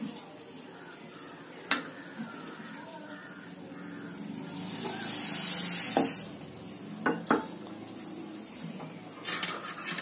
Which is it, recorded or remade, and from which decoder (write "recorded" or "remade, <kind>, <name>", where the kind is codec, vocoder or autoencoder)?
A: recorded